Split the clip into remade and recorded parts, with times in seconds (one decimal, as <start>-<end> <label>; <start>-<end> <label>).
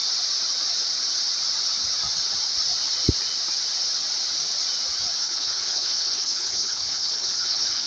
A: 0.0-5.2 recorded; 5.2-7.9 remade